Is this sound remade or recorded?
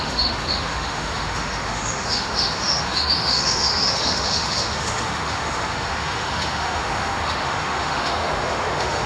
remade